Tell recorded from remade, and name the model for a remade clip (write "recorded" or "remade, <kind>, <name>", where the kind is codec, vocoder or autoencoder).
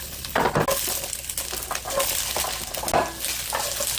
recorded